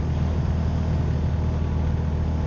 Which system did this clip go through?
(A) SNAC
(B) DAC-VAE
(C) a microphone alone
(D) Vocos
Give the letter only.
C